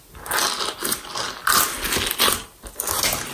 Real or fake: real